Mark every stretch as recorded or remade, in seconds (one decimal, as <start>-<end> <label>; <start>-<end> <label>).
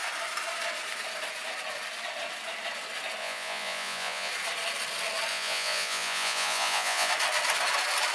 0.0-3.2 recorded; 3.2-4.3 remade; 4.3-5.3 recorded; 5.3-7.1 remade; 7.1-8.1 recorded